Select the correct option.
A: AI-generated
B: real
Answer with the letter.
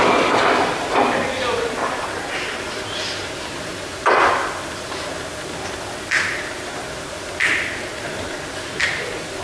B